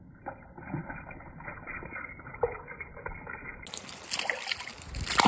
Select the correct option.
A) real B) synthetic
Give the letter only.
A